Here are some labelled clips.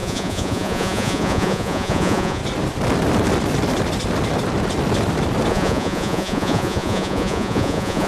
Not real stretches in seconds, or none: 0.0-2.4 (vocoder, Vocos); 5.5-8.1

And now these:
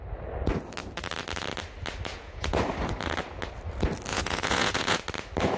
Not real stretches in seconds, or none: 2.1-2.6 (vocoder, Vocos); 4.1-5.0

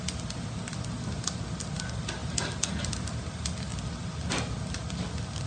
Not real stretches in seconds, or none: none

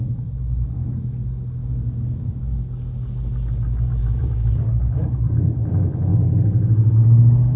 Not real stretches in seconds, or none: 1.6-2.4 (codec, DAC); 4.0-4.7

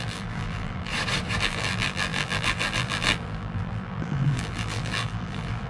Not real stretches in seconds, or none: 0.0-0.9 (vocoder, BigVGAN v2); 1.4-5.7

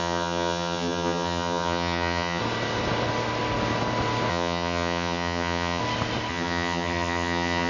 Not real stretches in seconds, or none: 0.0-2.4 (vocoder, HiFi-GAN); 4.3-5.8; 6.3-7.7

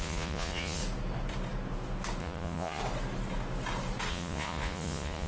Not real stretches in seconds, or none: 0.0-0.8 (vocoder, Vocos); 2.2-2.8; 4.1-5.3

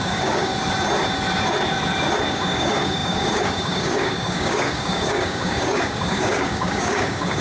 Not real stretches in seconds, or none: 0.0-0.5 (codec, DAC); 2.3-7.4